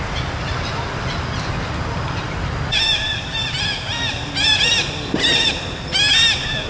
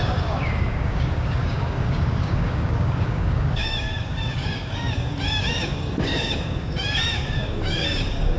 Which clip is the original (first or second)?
first